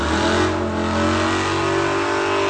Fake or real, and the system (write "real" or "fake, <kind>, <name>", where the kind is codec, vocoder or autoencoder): real